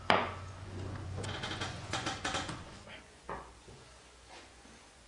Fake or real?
fake